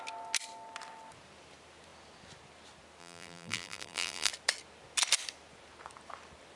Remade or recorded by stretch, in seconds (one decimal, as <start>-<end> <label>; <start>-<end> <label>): 0.0-3.0 recorded; 3.0-4.3 remade; 4.3-6.6 recorded